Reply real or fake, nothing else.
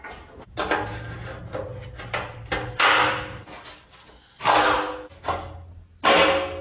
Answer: real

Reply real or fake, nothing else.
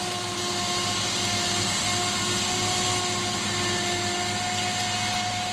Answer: real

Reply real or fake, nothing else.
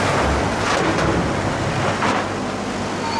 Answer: real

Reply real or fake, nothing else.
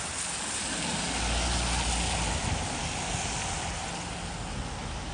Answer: real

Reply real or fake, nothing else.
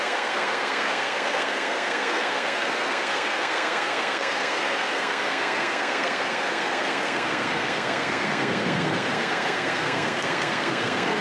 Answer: fake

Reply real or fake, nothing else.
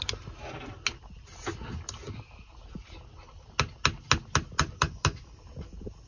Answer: real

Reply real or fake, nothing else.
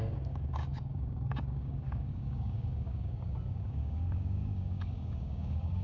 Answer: fake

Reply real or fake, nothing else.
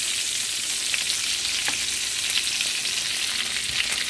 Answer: real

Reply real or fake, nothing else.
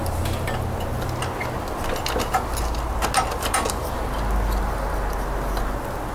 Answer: real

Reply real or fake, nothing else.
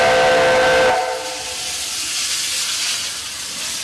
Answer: real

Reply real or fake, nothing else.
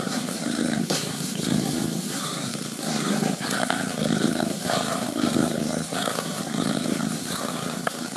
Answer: fake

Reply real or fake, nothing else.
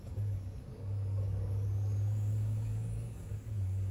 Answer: fake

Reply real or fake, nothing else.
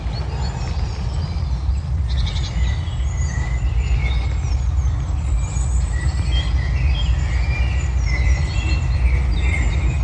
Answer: real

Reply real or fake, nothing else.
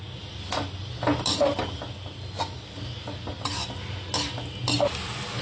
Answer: real